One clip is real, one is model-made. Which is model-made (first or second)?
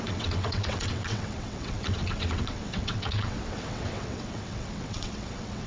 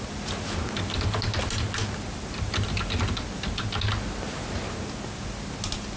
first